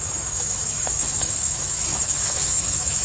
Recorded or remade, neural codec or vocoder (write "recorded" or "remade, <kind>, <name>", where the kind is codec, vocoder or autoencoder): remade, autoencoder, DAC-VAE